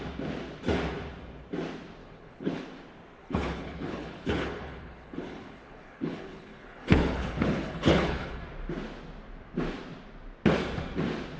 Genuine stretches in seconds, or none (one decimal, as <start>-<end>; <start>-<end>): 0.0-2.0; 2.6-3.2; 8.4-11.4